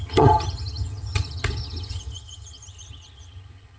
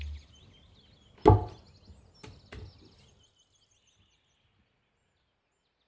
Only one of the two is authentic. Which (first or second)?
second